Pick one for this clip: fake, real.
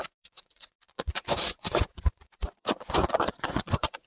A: fake